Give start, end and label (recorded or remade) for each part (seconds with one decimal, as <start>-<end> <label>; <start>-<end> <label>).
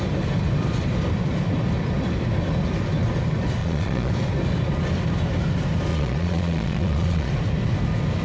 0.0-3.6 recorded; 3.6-4.1 remade; 4.1-5.9 recorded; 5.9-7.3 remade; 7.3-8.2 recorded